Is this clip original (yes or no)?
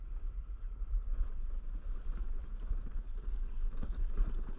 no